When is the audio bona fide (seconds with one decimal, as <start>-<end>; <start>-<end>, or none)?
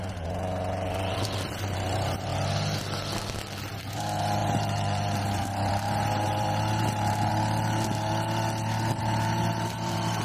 2.3-3.7; 7.3-9.0